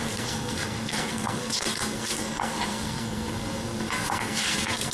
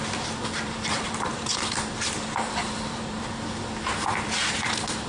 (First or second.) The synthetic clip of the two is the first